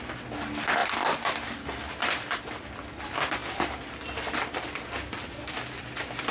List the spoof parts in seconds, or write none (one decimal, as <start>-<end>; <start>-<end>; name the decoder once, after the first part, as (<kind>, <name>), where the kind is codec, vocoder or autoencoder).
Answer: 0.8-2.4 (vocoder, BigVGAN v2); 3.4-5.5